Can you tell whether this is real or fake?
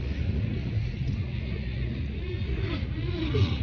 fake